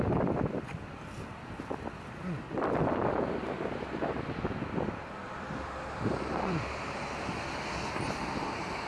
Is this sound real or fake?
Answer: fake